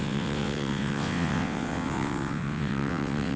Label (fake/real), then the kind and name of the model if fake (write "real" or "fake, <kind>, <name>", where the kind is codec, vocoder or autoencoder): fake, vocoder, WaveNeXt